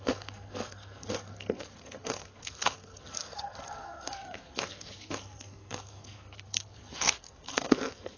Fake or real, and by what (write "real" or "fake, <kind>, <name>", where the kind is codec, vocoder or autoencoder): fake, codec, SNAC